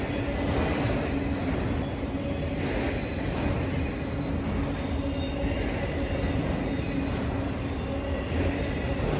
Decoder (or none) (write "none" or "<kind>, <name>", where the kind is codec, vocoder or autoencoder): none